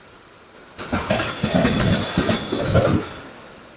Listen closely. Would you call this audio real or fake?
fake